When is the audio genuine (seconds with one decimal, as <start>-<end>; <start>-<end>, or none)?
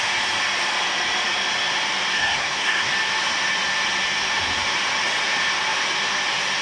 0.0-2.1; 2.9-6.6